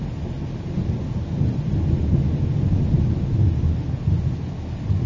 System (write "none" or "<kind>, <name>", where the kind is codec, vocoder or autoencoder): none